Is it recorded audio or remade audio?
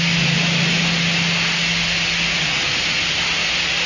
recorded